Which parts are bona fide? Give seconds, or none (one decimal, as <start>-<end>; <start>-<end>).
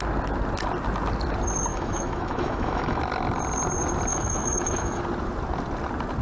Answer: 0.0-1.7; 3.0-4.1; 5.0-6.2